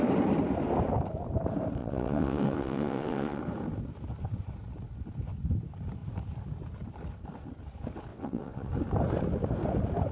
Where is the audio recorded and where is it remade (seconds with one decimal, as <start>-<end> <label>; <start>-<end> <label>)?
0.0-1.8 recorded; 1.8-3.4 remade; 3.4-8.1 recorded; 8.1-8.7 remade; 8.7-10.1 recorded